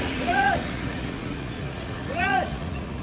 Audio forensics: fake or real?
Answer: fake